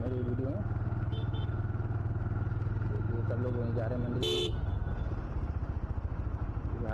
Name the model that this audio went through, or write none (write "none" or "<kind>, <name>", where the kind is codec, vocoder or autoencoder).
none